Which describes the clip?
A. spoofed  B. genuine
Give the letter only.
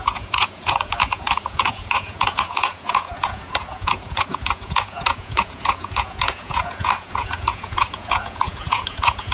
A